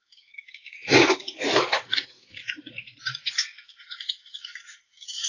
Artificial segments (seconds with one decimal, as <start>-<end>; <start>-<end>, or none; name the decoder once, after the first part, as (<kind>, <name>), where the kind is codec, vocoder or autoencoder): 0.0-2.4 (codec, DAC); 3.3-5.3